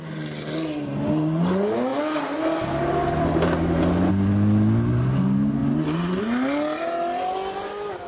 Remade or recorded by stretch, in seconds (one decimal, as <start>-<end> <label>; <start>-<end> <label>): 0.0-8.1 recorded